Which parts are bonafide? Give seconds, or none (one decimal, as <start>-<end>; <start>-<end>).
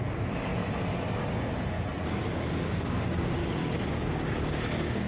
0.5-2.5; 3.4-3.9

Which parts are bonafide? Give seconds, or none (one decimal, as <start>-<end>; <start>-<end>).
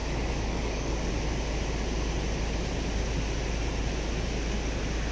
1.1-5.1